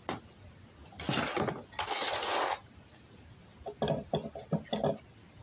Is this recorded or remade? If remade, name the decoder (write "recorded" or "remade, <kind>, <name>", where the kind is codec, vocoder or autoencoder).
recorded